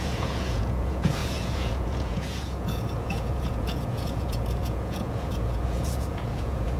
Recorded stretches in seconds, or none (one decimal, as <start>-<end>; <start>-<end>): none